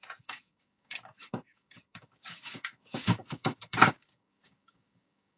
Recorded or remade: remade